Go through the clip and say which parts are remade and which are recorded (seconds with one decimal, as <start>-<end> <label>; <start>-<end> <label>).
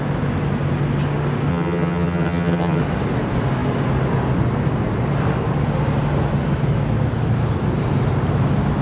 0.0-1.5 recorded; 1.5-2.8 remade; 2.8-8.8 recorded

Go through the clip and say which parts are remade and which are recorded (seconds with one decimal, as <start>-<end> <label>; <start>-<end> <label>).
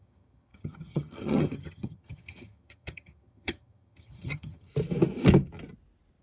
0.0-4.7 remade; 4.7-6.2 recorded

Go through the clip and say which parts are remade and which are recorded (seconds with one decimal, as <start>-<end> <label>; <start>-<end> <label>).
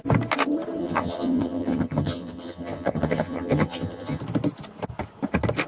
0.0-0.8 recorded; 0.8-4.2 remade; 4.2-5.7 recorded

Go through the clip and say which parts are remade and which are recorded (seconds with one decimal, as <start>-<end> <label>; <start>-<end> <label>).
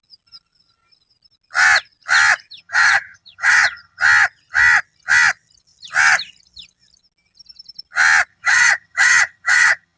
0.0-2.6 recorded; 2.6-4.0 remade; 4.0-8.3 recorded; 8.3-10.0 remade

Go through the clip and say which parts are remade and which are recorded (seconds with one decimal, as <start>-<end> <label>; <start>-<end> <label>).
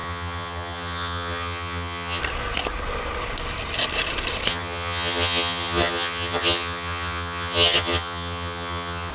0.0-2.2 remade; 2.2-4.5 recorded; 4.5-9.1 remade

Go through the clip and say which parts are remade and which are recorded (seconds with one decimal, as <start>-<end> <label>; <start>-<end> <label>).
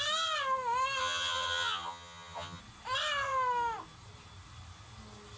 0.0-1.0 recorded; 1.0-2.6 remade; 2.6-5.4 recorded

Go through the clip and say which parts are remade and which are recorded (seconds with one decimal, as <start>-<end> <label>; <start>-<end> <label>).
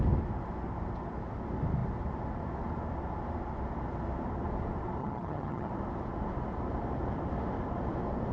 0.0-5.0 recorded; 5.0-5.7 remade; 5.7-8.3 recorded